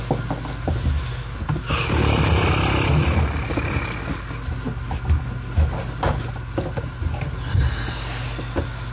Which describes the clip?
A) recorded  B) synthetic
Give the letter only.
A